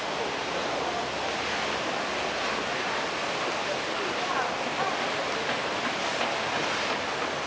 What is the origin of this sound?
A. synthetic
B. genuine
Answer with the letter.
B